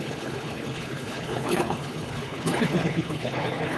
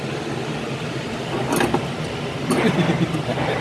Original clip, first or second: second